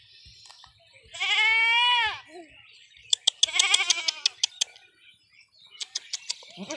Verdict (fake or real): real